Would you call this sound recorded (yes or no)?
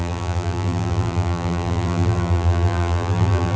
no